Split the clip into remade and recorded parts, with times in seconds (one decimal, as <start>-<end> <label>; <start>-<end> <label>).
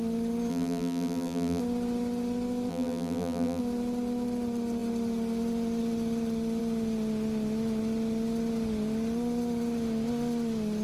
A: 0.0-0.5 recorded; 0.5-1.6 remade; 1.6-2.7 recorded; 2.7-3.6 remade; 3.6-10.8 recorded